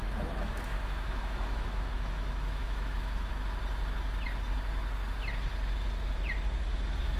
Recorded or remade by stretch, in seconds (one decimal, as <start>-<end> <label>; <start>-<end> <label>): 0.0-3.3 remade; 3.3-7.2 recorded